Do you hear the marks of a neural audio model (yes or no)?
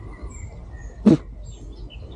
no